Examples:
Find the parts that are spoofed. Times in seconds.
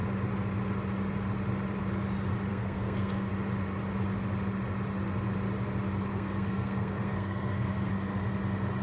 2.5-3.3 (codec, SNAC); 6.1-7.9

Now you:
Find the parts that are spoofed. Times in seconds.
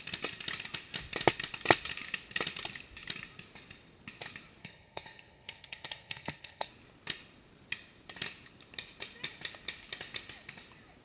4.6-6.7 (codec, SNAC)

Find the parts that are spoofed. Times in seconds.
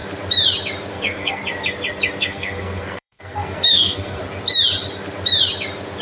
0.9-1.4 (codec, SNAC); 2.2-4.2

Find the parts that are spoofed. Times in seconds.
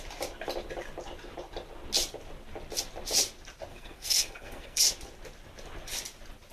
3.7-4.8 (codec, SNAC)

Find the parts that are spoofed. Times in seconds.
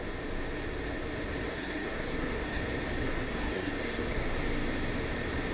1.5-2.6 (codec, SNAC); 3.0-4.3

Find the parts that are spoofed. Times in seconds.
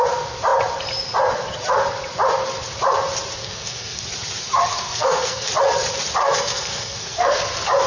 3.4-4.0 (codec, SNAC); 4.7-5.5; 6.2-7.4